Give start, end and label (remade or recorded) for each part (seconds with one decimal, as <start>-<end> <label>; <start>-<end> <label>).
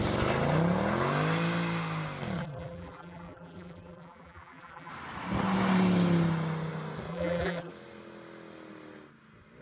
0.0-2.4 recorded; 2.4-4.9 remade; 4.9-7.1 recorded; 7.1-7.7 remade; 7.7-9.6 recorded